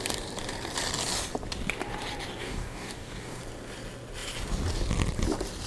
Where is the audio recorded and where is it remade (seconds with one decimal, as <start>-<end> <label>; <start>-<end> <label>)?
0.0-2.4 recorded; 2.4-3.4 remade; 3.4-5.7 recorded